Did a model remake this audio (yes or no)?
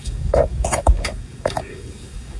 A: yes